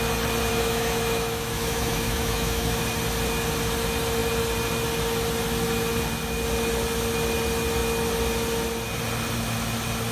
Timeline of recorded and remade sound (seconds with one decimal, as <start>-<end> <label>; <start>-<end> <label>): 0.0-0.5 recorded; 0.5-2.8 remade; 2.8-10.1 recorded